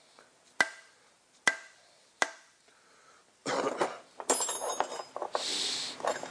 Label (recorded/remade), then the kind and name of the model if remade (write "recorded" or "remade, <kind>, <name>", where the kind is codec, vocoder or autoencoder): recorded